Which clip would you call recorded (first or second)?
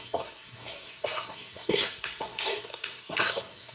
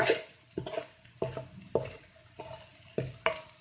second